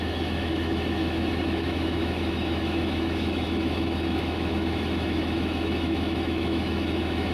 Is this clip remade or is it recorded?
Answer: remade